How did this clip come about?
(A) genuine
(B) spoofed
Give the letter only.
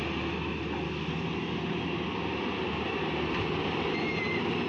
A